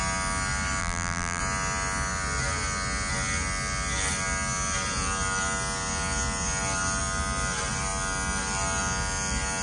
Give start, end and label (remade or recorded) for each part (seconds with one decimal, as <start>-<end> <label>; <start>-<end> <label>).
0.0-0.8 recorded; 0.8-1.4 remade; 1.4-9.6 recorded

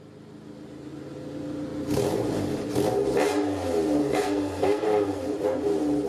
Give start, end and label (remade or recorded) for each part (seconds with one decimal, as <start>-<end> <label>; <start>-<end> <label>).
0.0-4.0 recorded; 4.0-5.2 remade; 5.2-6.1 recorded

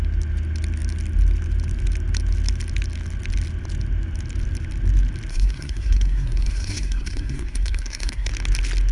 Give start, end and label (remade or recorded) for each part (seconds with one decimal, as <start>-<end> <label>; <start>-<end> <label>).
0.0-5.3 recorded; 5.3-8.3 remade; 8.3-8.9 recorded